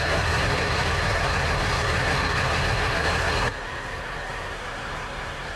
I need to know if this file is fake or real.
fake